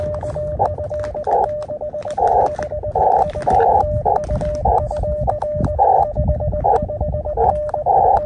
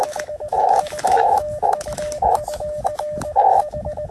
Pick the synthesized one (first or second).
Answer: second